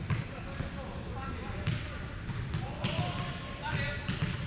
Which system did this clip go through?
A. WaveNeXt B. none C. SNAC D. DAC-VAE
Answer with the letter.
B